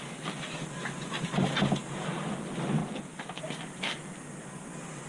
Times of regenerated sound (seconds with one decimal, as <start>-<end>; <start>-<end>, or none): none